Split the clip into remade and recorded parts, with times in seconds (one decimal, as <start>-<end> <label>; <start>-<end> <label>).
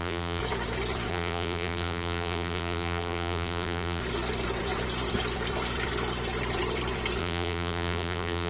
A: 0.0-0.4 remade; 0.4-1.1 recorded; 1.1-4.0 remade; 4.0-7.2 recorded; 7.2-8.5 remade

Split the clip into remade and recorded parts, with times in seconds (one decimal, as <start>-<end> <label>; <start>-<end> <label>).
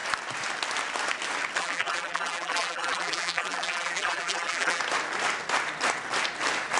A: 0.0-1.6 recorded; 1.6-4.8 remade; 4.8-6.8 recorded